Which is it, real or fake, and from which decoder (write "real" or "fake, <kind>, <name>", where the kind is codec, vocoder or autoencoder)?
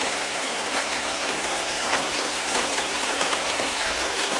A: fake, codec, SNAC